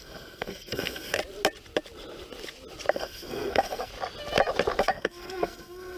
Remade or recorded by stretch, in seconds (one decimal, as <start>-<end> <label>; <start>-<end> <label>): 0.0-1.2 remade; 1.2-2.9 recorded; 2.9-3.9 remade; 3.9-4.8 recorded; 4.8-6.0 remade